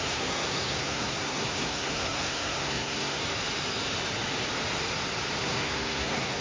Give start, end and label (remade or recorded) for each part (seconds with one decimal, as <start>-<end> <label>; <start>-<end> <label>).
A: 0.0-3.2 remade; 3.2-5.4 recorded; 5.4-6.4 remade